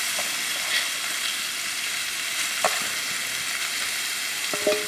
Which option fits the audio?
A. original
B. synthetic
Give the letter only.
A